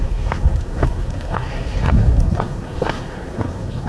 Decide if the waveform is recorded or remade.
remade